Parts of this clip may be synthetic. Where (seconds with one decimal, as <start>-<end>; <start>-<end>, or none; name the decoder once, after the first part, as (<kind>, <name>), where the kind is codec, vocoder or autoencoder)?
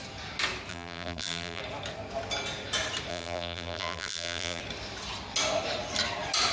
0.7-1.6 (vocoder, BigVGAN v2); 3.1-4.6